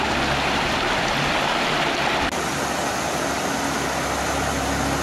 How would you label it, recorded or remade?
recorded